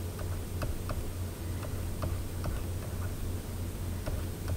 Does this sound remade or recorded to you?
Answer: recorded